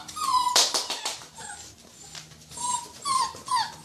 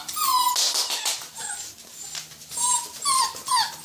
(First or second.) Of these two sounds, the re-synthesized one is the first